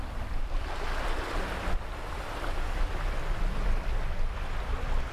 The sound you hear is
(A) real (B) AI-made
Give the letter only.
A